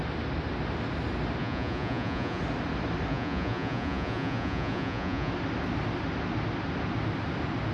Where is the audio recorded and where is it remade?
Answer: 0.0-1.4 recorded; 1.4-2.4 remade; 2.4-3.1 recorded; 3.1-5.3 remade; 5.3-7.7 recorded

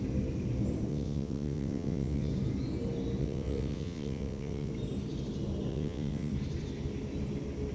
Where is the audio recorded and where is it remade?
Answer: 0.0-0.9 recorded; 0.9-2.3 remade; 2.3-3.2 recorded; 3.2-4.7 remade; 4.7-5.7 recorded; 5.7-6.3 remade; 6.3-7.7 recorded